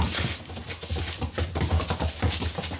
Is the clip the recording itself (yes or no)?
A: yes